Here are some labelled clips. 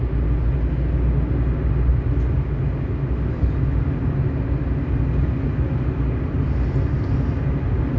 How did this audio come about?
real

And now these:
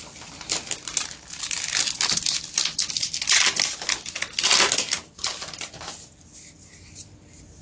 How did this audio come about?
real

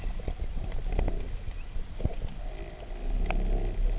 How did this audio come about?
real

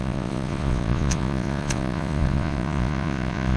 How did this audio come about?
fake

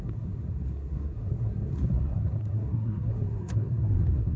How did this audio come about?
fake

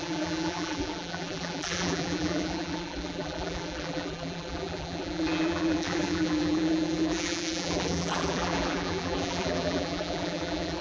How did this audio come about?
fake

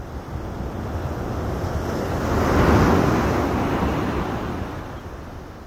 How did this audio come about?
real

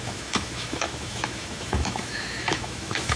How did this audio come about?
fake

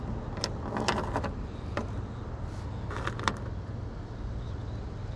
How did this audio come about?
real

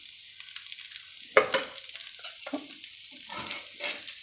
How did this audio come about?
real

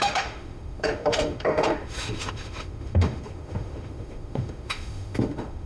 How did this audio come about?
fake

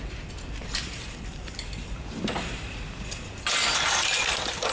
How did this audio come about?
real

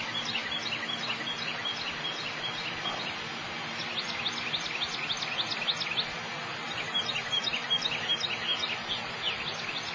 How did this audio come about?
real